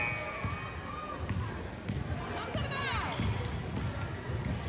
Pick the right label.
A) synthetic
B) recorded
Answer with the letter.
B